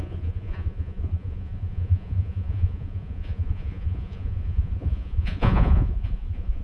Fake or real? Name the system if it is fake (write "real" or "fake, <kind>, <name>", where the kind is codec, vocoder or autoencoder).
fake, vocoder, Vocos